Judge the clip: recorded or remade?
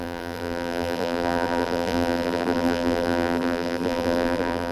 remade